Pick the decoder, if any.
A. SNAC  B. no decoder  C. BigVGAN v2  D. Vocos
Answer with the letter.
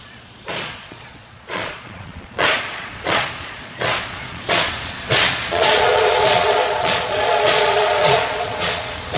D